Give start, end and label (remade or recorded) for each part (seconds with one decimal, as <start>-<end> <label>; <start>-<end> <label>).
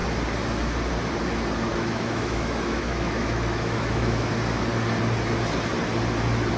0.0-1.7 recorded; 1.7-4.3 remade; 4.3-6.6 recorded